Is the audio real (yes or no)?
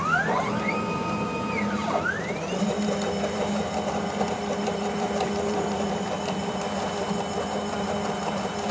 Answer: no